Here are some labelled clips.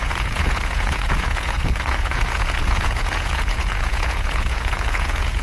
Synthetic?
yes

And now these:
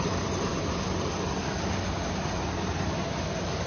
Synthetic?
no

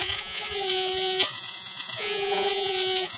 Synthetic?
yes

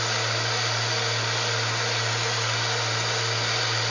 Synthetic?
no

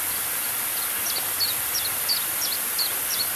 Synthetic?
no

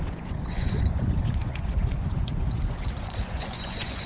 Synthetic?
yes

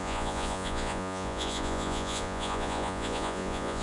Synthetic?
yes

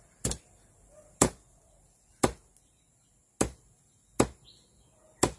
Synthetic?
no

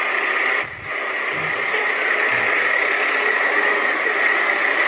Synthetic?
no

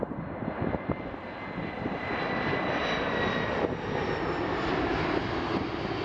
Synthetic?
no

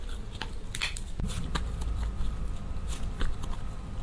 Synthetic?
no